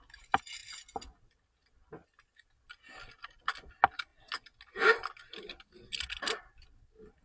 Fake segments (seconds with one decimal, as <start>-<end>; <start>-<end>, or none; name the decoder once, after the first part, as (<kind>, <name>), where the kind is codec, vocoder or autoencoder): none